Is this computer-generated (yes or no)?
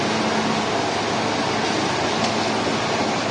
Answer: no